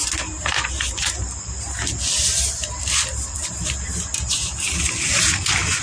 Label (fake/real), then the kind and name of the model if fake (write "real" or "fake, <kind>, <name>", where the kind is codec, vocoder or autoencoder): real